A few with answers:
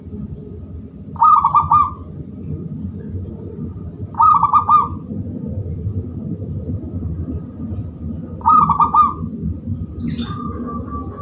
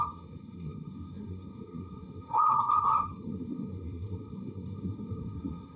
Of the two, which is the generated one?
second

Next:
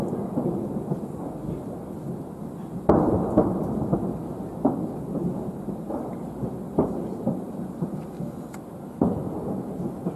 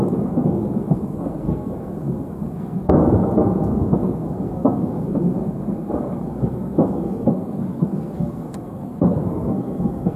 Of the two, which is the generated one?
second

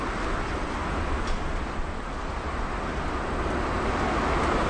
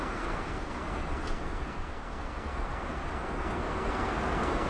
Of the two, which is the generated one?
second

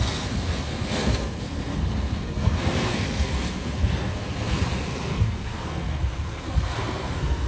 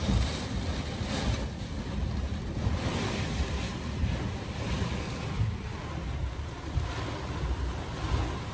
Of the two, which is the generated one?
first